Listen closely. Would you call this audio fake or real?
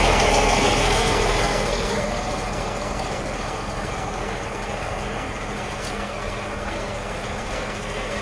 fake